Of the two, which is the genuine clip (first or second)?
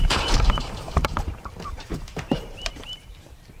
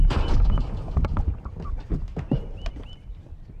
second